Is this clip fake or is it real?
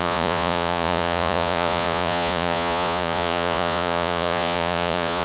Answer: fake